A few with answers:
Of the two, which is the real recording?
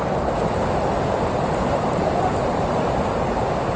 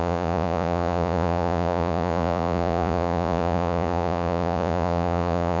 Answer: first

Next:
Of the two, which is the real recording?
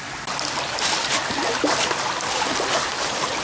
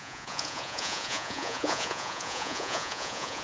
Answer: first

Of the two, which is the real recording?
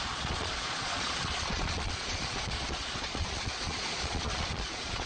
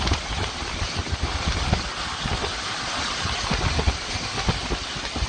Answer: second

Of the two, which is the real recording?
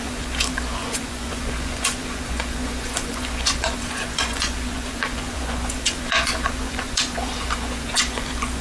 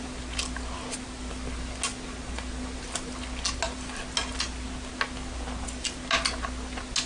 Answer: second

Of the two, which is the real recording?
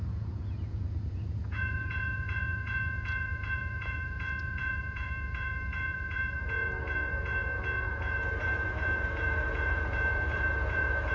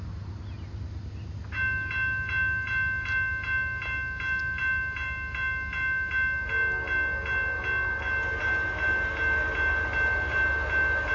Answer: second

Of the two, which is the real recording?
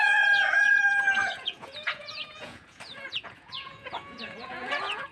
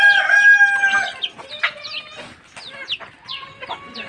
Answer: second